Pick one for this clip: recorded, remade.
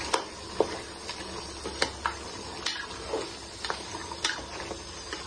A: recorded